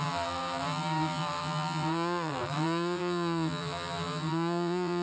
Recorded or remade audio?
remade